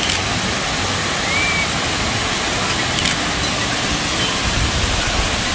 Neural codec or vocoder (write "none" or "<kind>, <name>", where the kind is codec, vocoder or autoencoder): none